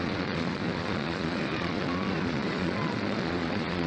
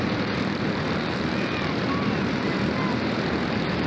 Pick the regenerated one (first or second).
first